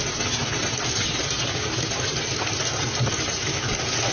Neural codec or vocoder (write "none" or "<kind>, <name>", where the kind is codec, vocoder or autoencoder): none